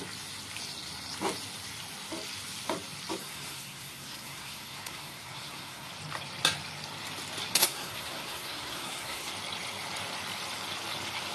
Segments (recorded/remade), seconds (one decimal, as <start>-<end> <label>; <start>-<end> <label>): 0.0-3.2 recorded; 3.2-5.9 remade; 5.9-7.5 recorded; 7.5-9.3 remade; 9.3-11.3 recorded